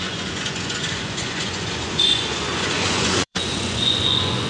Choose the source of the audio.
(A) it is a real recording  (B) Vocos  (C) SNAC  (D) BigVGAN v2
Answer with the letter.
B